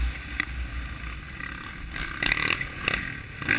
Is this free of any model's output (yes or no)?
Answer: yes